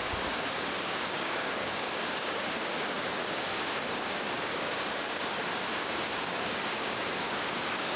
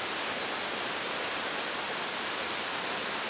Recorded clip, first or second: second